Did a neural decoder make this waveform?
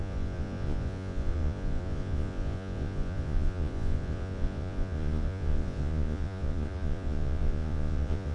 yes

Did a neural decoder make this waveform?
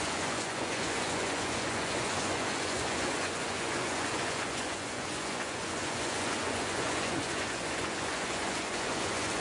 yes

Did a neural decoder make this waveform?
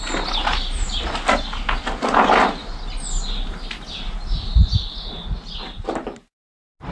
no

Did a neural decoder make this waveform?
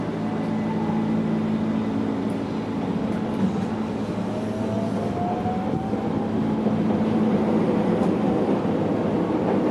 no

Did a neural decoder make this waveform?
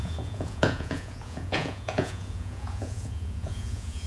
yes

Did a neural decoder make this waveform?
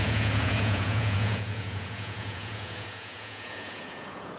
yes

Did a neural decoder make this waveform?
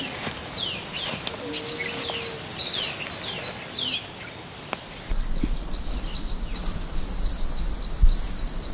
no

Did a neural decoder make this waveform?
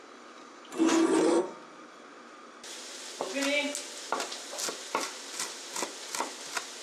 no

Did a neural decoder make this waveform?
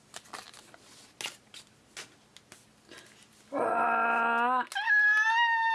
no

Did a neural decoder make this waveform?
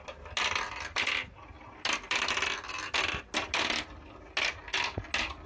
no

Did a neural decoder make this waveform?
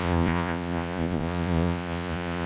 yes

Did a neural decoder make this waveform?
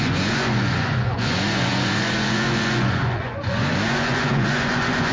yes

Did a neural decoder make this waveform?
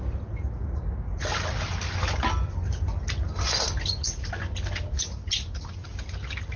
no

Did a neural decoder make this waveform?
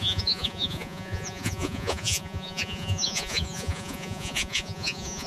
yes